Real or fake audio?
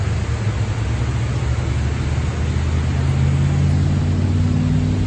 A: real